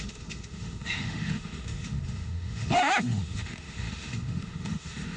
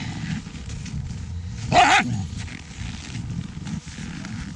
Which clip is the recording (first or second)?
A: second